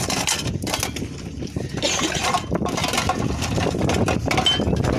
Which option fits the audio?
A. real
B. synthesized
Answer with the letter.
A